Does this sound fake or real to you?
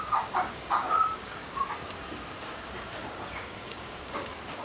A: fake